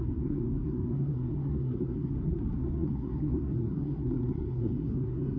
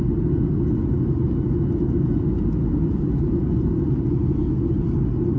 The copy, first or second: first